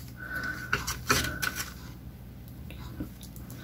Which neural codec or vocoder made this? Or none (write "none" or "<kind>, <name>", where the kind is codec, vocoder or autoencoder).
none